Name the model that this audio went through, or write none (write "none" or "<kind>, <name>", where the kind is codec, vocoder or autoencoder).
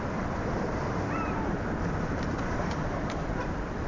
vocoder, BigVGAN v2